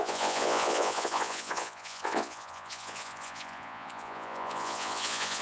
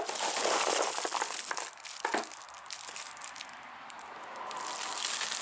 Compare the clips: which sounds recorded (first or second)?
second